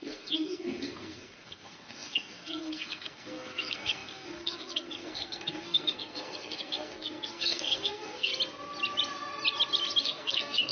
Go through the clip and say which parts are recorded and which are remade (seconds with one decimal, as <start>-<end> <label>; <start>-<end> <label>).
0.0-8.3 remade; 8.3-10.0 recorded; 10.0-10.7 remade